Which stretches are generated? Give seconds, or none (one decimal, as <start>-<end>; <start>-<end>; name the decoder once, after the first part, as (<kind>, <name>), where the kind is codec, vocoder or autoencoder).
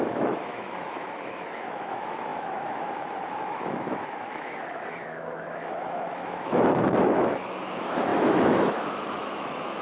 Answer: 0.0-9.8 (autoencoder, DAC-VAE)